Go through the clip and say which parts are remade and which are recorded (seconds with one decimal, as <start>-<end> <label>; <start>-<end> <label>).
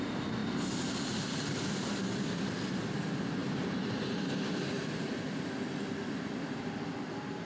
0.0-7.5 recorded